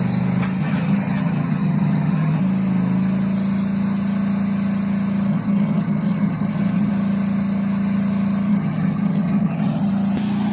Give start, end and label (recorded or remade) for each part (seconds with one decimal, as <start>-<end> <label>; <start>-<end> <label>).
0.0-0.6 recorded; 0.6-2.4 remade; 2.4-5.3 recorded; 5.3-6.9 remade; 6.9-8.5 recorded; 8.5-9.9 remade; 9.9-10.5 recorded